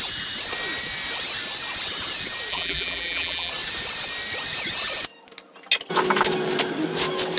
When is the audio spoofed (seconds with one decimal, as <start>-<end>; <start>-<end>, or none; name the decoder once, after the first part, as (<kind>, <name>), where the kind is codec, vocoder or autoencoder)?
2.5-3.5 (vocoder, BigVGAN v2)